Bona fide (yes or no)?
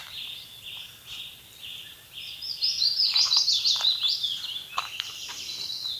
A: yes